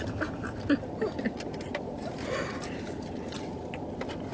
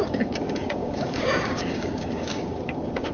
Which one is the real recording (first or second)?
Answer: first